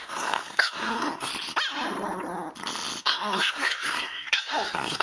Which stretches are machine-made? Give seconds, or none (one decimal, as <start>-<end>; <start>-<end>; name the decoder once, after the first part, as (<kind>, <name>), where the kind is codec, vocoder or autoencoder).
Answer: 0.0-1.3 (codec, SNAC); 3.0-5.0

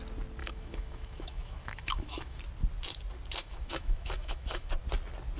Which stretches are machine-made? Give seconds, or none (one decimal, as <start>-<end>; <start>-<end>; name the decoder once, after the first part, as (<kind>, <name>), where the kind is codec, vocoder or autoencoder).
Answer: 0.4-2.4 (autoencoder, DAC-VAE); 3.4-4.7

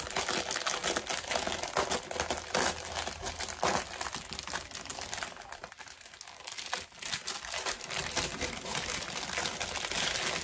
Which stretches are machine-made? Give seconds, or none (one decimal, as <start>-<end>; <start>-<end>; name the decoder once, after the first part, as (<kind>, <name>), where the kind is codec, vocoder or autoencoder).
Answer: 4.9-5.8 (vocoder, BigVGAN v2)